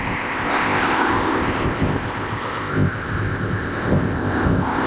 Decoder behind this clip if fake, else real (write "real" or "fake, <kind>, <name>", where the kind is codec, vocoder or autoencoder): fake, codec, ZipCodec